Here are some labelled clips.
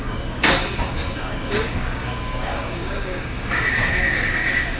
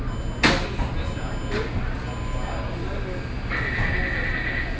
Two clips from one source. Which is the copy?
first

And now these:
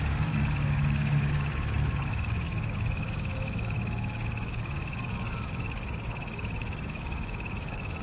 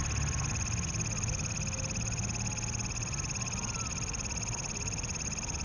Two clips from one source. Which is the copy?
first